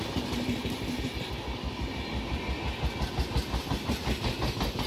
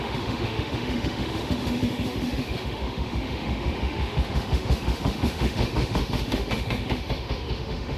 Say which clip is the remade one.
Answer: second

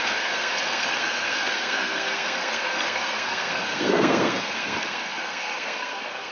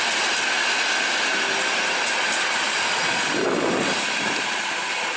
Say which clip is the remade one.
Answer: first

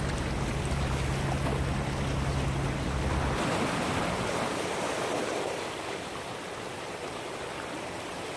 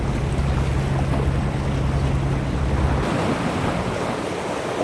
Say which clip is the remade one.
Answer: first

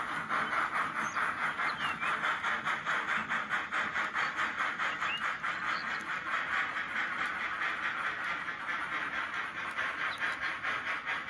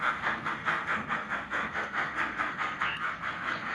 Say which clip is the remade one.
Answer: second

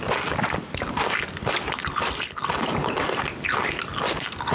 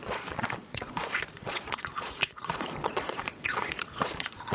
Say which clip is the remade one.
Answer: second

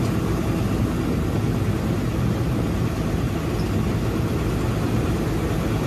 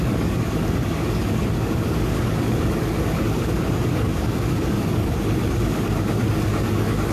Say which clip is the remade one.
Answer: second